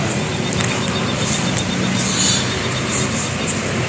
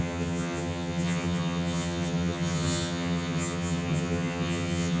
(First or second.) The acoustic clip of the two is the first